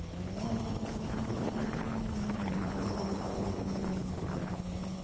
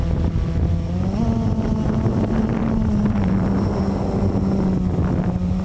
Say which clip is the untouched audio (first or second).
second